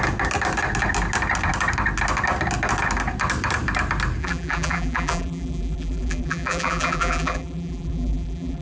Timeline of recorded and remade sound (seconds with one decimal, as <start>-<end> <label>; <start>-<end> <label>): 0.0-4.2 recorded; 4.2-8.6 remade

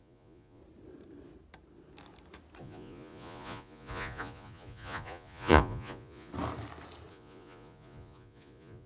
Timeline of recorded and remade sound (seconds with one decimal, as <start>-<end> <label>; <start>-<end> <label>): 0.0-0.6 remade; 0.6-2.6 recorded; 2.6-6.3 remade; 6.3-7.1 recorded; 7.1-8.9 remade